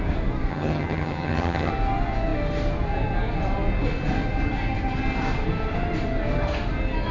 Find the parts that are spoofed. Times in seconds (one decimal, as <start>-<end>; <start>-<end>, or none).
0.5-1.7